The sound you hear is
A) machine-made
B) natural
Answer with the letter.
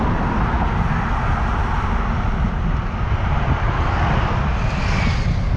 B